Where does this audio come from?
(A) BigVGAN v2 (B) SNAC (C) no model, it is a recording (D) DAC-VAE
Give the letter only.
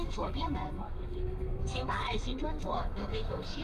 B